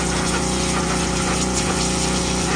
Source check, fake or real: fake